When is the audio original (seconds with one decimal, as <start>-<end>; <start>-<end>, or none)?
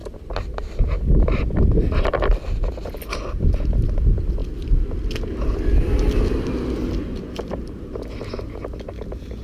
0.0-9.4